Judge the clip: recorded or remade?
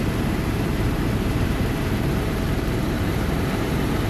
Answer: remade